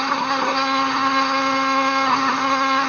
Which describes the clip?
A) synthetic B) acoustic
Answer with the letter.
A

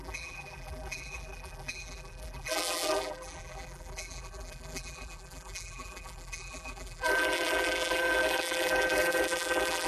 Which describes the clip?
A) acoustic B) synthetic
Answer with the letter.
B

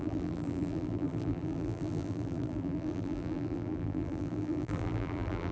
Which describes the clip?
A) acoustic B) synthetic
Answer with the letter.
B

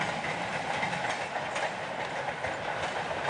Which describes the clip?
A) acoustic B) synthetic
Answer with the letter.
B